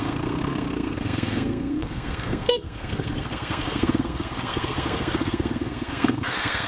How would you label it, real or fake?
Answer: fake